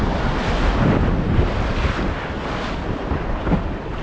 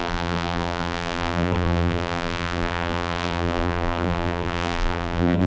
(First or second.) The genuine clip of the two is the first